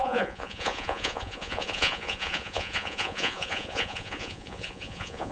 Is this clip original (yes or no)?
no